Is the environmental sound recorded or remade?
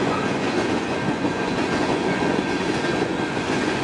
remade